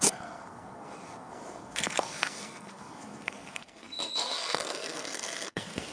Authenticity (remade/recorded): remade